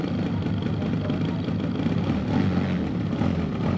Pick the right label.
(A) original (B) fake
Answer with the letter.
A